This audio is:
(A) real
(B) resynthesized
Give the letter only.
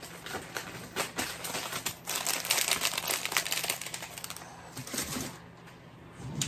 A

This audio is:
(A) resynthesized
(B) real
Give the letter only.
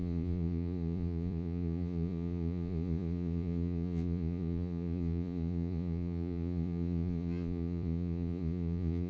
A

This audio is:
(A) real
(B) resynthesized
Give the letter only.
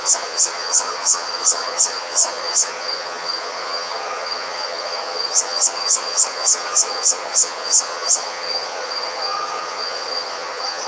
B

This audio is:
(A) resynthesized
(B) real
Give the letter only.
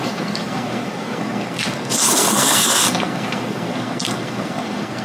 A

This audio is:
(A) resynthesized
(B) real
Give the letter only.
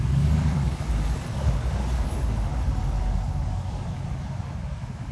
A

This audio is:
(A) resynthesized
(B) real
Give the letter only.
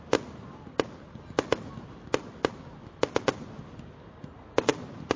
B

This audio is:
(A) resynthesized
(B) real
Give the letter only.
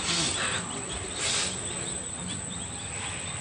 B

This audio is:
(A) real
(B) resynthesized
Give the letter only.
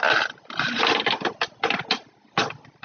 A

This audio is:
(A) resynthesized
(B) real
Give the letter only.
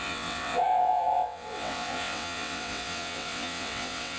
A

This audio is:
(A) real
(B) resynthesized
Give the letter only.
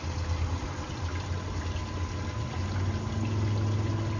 A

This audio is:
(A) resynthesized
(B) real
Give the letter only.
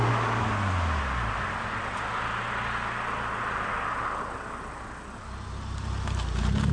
B